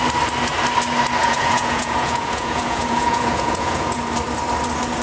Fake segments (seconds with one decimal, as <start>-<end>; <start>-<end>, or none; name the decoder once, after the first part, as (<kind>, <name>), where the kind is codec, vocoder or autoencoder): 1.2-4.0 (vocoder, Vocos)